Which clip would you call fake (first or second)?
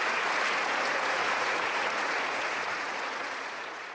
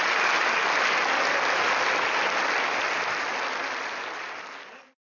first